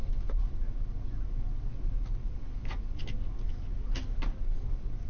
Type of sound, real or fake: real